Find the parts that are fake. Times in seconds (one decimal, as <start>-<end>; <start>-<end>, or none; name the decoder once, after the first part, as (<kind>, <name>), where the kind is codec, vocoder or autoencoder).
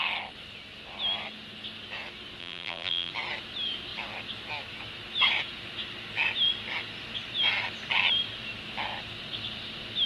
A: 2.4-3.1 (vocoder, BigVGAN v2)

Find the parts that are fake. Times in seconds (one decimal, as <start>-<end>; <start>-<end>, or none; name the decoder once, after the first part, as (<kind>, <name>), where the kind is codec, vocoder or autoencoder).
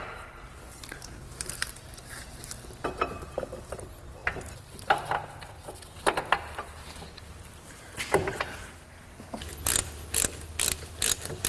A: none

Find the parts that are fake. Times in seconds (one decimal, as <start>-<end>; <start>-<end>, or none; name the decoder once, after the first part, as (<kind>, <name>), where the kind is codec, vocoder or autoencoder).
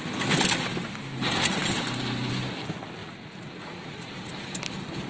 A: 3.0-4.3 (vocoder, Vocos)